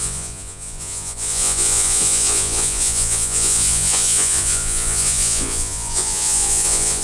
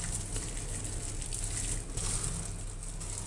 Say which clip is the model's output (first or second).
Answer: first